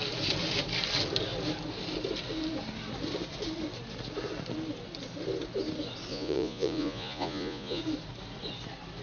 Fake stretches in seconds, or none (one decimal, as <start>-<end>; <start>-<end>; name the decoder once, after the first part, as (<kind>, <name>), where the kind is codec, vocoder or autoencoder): 6.1-7.8 (vocoder, Vocos)